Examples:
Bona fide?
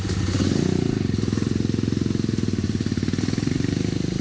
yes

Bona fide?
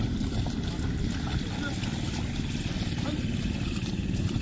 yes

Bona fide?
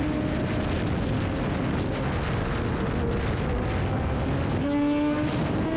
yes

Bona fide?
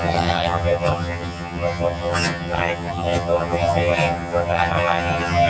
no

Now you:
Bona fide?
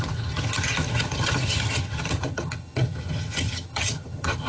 no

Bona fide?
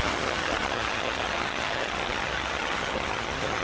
no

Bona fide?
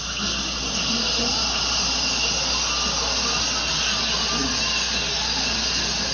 yes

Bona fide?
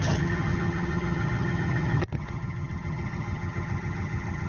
no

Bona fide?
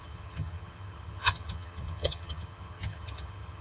no